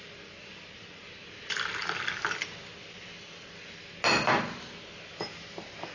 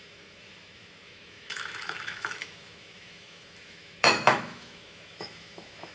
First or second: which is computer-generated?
second